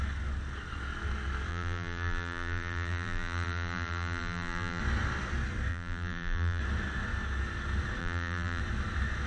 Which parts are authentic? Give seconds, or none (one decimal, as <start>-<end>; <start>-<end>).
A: 0.0-1.5; 4.8-5.7; 6.6-8.0; 8.6-9.3